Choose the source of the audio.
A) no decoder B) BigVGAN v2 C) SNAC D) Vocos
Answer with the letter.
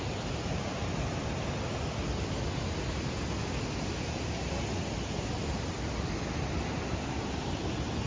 A